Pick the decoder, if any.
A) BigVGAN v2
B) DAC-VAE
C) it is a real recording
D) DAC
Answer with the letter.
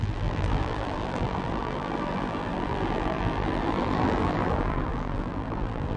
A